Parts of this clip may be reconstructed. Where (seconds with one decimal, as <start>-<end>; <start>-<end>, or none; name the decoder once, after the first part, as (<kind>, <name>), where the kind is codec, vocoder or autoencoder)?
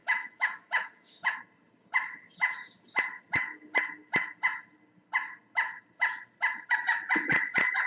0.0-1.4 (autoencoder, DAC-VAE)